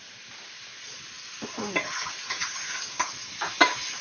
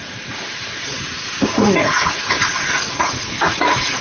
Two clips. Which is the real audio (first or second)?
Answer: first